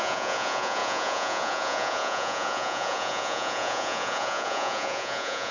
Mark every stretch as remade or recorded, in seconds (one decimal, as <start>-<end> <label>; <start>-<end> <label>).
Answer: 0.0-5.5 remade